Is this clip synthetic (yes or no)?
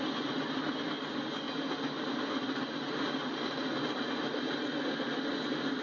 no